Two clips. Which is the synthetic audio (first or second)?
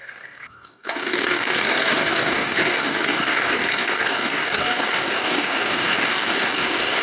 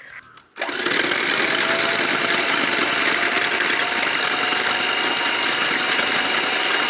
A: first